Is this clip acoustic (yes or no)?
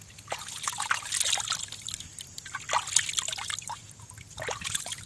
yes